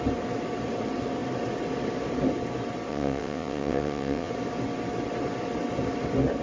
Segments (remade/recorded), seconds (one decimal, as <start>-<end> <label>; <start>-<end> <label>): 0.0-2.9 recorded; 2.9-4.3 remade; 4.3-6.4 recorded